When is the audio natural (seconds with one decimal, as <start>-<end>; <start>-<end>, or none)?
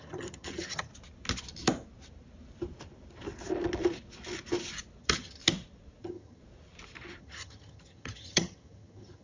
0.9-5.0; 5.4-6.0; 6.4-7.2